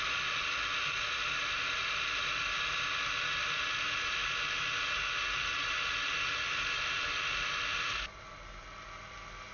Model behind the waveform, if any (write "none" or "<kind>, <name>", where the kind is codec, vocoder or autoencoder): none